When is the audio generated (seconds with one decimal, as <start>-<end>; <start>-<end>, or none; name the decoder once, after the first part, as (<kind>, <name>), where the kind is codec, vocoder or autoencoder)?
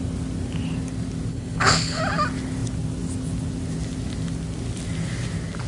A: 1.3-2.0 (codec, HILCodec)